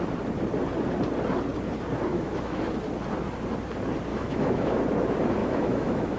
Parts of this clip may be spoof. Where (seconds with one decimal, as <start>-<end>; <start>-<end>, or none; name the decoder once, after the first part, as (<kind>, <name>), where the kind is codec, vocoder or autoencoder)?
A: 2.1-2.6 (autoencoder, DAC-VAE); 4.1-4.8; 5.4-6.2